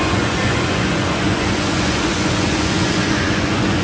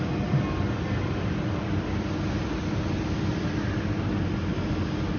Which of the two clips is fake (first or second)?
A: first